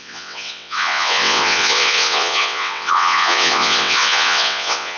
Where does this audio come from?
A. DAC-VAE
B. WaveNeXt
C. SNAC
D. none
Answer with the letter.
B